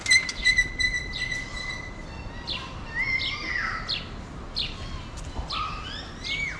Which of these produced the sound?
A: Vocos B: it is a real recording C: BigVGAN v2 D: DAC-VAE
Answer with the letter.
B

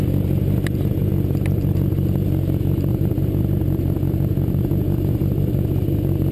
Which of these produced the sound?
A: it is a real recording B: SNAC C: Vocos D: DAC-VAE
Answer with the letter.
A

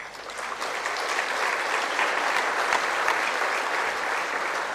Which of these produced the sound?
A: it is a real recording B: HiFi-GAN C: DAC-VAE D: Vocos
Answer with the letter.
A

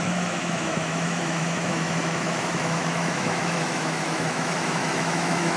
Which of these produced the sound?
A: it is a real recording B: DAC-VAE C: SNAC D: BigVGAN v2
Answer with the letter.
B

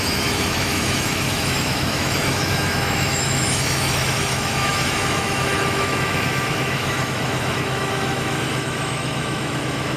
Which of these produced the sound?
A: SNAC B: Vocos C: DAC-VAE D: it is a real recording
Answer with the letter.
C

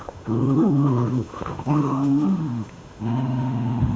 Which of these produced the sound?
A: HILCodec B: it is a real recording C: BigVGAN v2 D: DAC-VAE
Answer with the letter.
D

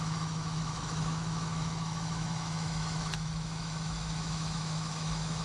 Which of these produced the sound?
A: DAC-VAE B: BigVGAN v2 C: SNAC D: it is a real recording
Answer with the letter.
A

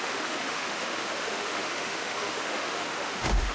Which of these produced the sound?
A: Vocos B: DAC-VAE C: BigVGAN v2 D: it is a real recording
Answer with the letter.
B